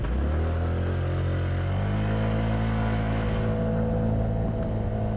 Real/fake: real